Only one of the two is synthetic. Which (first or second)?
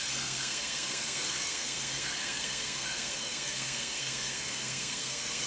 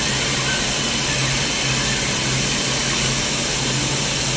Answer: first